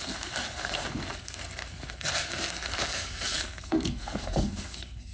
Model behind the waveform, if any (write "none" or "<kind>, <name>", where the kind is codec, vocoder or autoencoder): codec, SNAC